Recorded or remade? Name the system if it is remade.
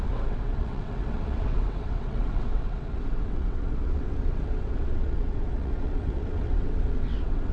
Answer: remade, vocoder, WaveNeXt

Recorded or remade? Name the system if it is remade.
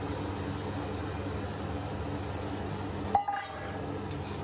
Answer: recorded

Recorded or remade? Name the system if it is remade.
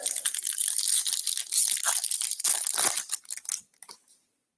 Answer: recorded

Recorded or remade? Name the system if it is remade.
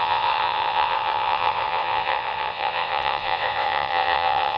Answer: remade, vocoder, WaveNeXt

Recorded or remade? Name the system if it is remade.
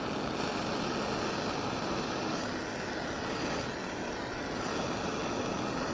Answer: recorded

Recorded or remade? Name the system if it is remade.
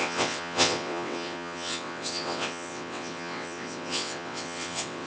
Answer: remade, vocoder, WaveNeXt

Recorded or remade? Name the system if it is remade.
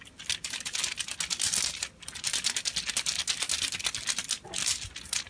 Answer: recorded